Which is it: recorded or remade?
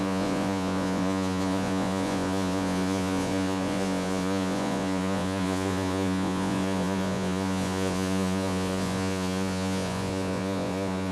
remade